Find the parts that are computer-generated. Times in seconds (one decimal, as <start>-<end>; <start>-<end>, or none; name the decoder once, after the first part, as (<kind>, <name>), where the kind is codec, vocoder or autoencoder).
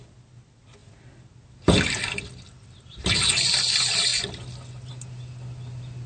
none